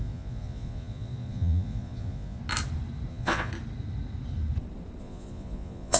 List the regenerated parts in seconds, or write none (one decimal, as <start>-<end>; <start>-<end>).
0.0-2.4; 3.1-3.5; 5.0-6.0